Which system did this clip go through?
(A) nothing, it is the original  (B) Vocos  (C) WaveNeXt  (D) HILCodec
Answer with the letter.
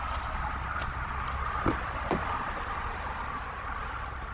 A